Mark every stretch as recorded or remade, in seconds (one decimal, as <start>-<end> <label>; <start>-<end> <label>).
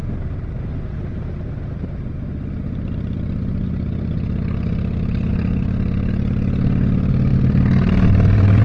0.0-5.3 recorded; 5.3-6.1 remade; 6.1-7.3 recorded; 7.3-8.6 remade